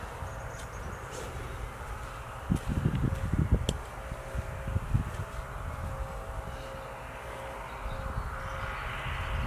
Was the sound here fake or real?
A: real